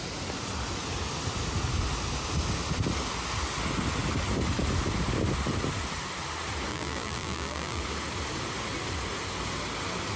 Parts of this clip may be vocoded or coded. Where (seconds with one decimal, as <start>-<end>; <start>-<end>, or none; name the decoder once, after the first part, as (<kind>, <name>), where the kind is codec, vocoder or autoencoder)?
6.7-7.8 (vocoder, BigVGAN v2)